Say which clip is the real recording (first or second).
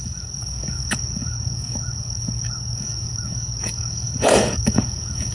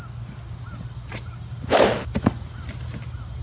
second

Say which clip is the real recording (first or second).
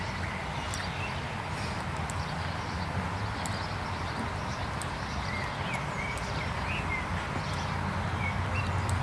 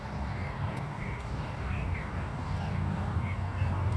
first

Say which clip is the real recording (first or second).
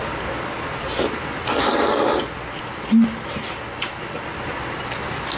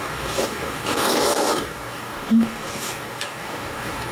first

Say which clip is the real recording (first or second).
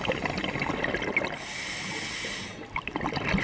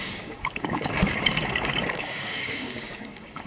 first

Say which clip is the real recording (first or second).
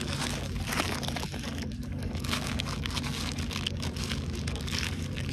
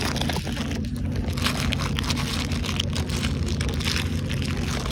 second